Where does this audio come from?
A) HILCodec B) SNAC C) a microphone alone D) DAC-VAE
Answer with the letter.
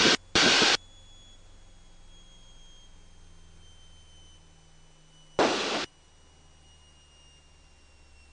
C